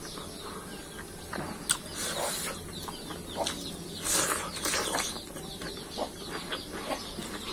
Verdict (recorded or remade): recorded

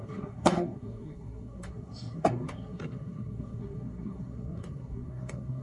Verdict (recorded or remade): remade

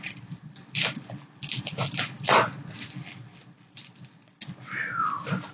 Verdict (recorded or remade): recorded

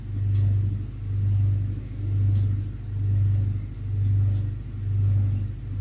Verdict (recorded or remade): recorded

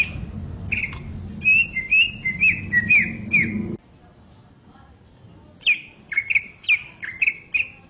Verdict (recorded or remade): recorded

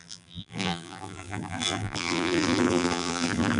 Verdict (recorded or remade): remade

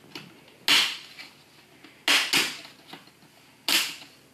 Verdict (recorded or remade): recorded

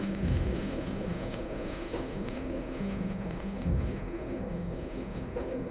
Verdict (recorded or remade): remade